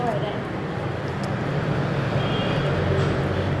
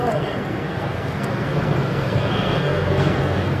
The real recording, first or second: first